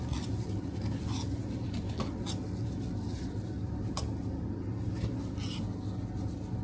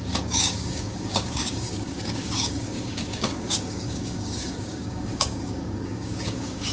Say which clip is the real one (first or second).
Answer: first